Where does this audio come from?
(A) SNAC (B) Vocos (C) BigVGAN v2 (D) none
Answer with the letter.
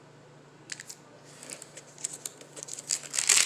D